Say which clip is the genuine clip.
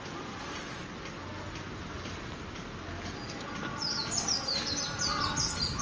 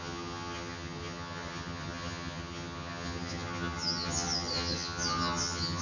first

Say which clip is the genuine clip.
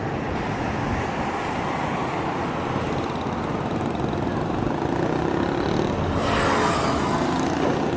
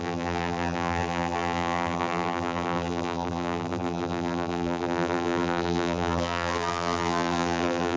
first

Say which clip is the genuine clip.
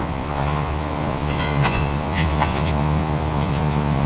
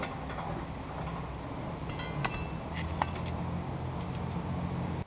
second